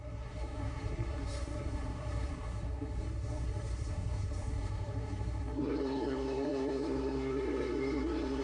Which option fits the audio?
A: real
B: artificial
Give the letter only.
B